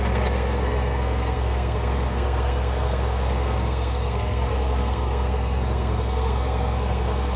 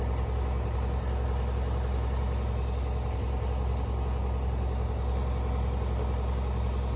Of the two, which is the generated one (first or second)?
first